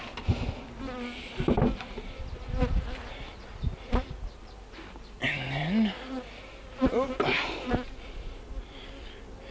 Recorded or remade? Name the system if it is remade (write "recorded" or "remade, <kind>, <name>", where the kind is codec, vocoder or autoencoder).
recorded